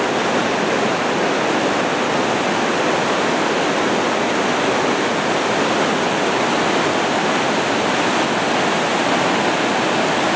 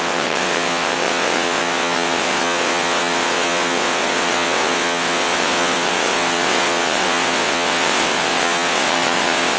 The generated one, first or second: second